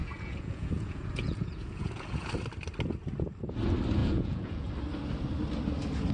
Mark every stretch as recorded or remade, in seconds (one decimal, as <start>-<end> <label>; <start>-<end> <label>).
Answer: 0.0-2.3 remade; 2.3-4.0 recorded; 4.0-4.7 remade; 4.7-6.1 recorded